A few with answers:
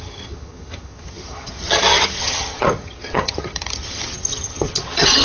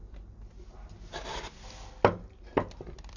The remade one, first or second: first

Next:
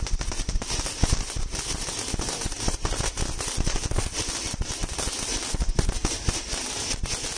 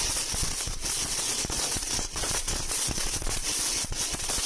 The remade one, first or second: second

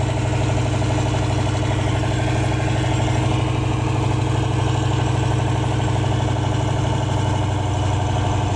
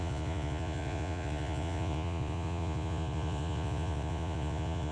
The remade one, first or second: second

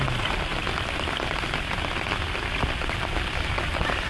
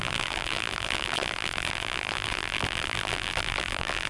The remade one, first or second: second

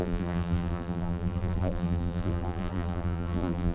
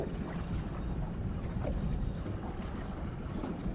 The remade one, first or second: first